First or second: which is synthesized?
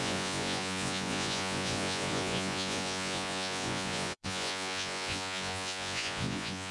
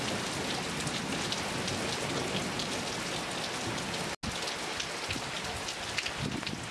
first